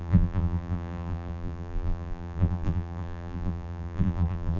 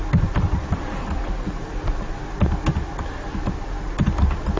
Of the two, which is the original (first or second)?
second